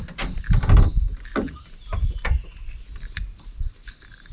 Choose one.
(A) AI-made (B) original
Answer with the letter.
B